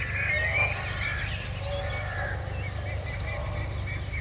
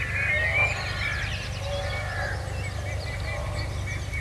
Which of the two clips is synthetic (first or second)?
first